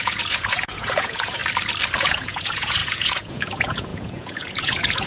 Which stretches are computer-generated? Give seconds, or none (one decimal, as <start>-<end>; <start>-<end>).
0.0-1.4; 2.0-5.1